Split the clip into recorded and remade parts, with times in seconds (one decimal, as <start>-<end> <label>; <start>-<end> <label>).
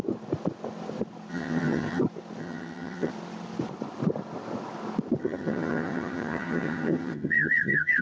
0.0-1.3 recorded; 1.3-2.0 remade; 2.0-2.4 recorded; 2.4-3.1 remade; 3.1-5.2 recorded; 5.2-8.0 remade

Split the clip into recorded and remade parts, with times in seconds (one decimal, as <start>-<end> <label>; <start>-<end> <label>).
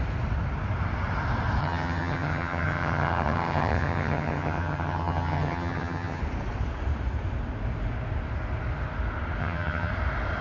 0.0-1.6 recorded; 1.6-6.2 remade; 6.2-9.4 recorded; 9.4-9.9 remade; 9.9-10.4 recorded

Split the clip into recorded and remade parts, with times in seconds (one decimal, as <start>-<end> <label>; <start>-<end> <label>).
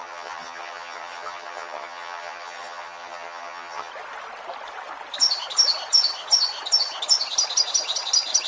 0.0-3.9 remade; 3.9-8.5 recorded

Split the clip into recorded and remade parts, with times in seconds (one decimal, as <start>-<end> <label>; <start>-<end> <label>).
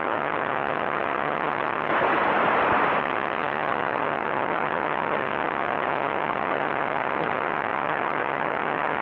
0.0-1.9 remade; 1.9-3.0 recorded; 3.0-9.0 remade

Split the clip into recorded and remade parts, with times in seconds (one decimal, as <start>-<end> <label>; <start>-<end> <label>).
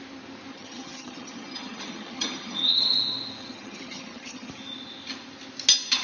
0.0-0.5 recorded; 0.5-2.8 remade; 2.8-3.4 recorded; 3.4-4.5 remade; 4.5-6.0 recorded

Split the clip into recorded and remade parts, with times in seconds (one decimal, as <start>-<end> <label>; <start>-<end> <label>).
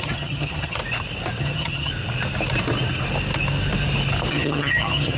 0.0-0.8 remade; 0.8-1.4 recorded; 1.4-1.9 remade; 1.9-4.3 recorded; 4.3-5.2 remade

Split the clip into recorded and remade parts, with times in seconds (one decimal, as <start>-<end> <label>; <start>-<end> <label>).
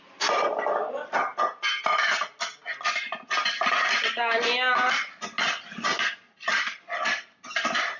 0.0-8.0 recorded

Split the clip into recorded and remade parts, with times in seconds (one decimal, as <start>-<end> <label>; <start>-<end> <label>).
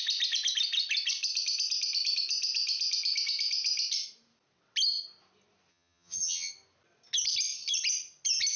0.0-5.7 recorded; 5.7-6.5 remade; 6.5-8.6 recorded